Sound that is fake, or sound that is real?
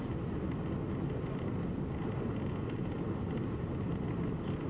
real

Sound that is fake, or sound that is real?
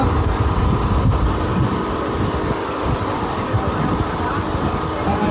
fake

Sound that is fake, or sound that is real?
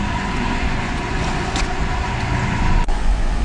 fake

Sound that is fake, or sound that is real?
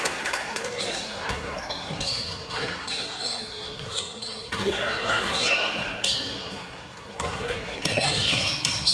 fake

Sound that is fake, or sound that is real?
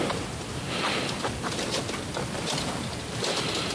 real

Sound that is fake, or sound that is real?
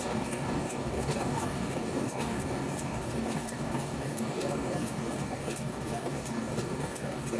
fake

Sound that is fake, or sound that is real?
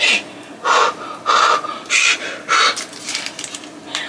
real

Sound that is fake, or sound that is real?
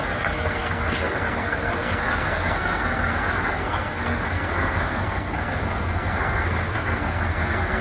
fake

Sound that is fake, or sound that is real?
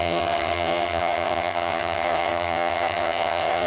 fake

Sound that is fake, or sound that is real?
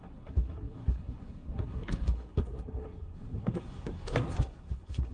fake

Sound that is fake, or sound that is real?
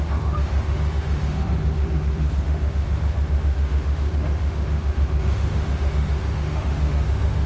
fake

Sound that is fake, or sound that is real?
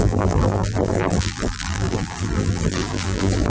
fake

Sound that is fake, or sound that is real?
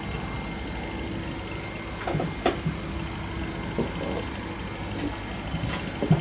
real